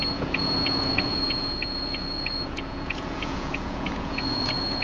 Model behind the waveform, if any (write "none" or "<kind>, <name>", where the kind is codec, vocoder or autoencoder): vocoder, Vocos